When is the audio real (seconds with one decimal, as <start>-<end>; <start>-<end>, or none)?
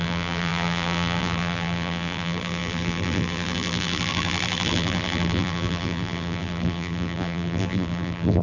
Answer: none